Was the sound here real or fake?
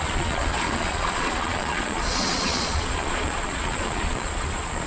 fake